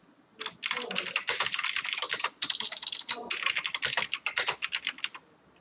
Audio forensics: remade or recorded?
recorded